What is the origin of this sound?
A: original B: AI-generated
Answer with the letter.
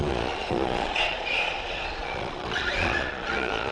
B